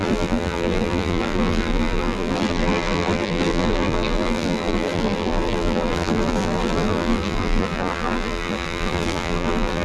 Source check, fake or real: fake